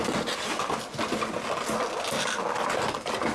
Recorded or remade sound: recorded